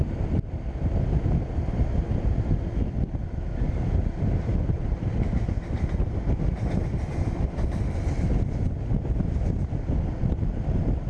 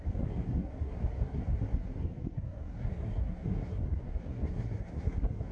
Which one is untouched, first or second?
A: first